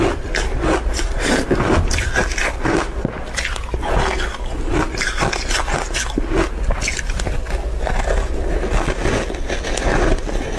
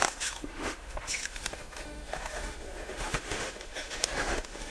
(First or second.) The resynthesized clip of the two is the second